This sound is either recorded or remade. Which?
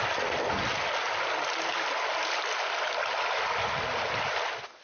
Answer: recorded